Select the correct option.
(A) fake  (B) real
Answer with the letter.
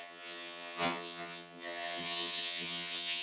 A